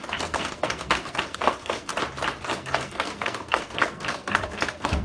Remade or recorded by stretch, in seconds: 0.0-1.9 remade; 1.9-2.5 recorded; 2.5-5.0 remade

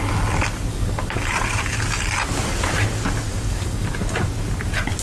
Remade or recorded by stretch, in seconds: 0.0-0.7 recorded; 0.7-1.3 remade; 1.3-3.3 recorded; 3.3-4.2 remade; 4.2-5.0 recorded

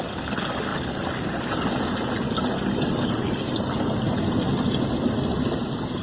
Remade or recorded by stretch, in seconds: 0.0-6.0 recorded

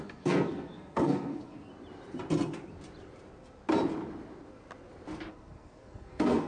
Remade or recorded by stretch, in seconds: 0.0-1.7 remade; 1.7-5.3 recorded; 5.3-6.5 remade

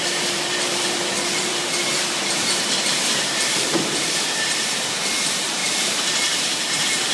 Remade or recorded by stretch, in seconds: 0.0-7.1 remade